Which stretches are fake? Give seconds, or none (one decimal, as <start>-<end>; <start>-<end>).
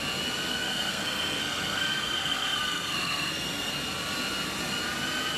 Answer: 0.5-3.7